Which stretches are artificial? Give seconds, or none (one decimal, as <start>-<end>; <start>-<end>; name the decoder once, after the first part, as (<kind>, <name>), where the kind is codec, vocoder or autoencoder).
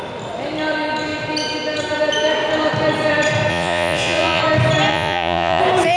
3.5-4.4 (vocoder, Vocos); 4.9-5.6